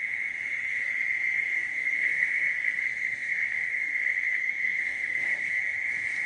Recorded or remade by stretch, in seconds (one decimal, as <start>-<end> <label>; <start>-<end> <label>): 0.0-1.7 recorded; 1.7-5.5 remade; 5.5-6.3 recorded

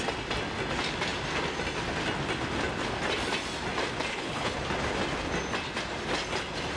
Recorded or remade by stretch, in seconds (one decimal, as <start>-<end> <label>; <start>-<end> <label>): 0.0-4.1 recorded; 4.1-4.6 remade; 4.6-6.8 recorded

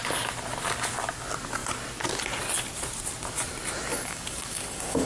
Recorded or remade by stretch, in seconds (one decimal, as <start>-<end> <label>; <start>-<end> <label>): 0.0-3.9 recorded; 3.9-5.1 remade

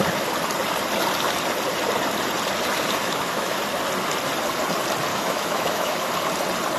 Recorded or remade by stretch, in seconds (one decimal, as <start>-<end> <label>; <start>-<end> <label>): 0.0-3.0 recorded; 3.0-3.6 remade; 3.6-5.1 recorded; 5.1-6.1 remade; 6.1-6.8 recorded

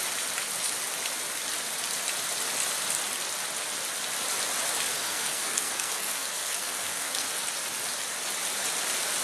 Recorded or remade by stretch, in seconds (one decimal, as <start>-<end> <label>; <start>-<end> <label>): 0.0-4.9 recorded; 4.9-7.5 remade; 7.5-9.2 recorded